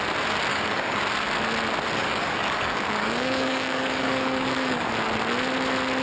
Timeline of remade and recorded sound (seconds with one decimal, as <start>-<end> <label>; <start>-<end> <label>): 0.0-0.5 recorded; 0.5-1.0 remade; 1.0-2.0 recorded; 2.0-4.9 remade; 4.9-6.0 recorded